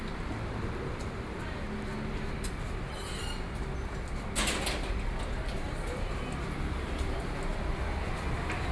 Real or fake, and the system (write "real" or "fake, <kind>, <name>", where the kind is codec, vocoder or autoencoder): real